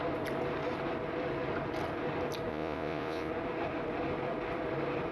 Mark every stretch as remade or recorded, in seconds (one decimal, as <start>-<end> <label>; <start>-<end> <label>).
0.0-2.5 recorded; 2.5-3.3 remade; 3.3-5.1 recorded